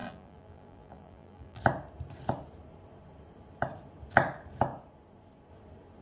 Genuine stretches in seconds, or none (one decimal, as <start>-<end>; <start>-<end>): 1.6-6.0